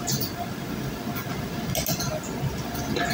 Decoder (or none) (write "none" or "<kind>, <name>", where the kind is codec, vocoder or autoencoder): none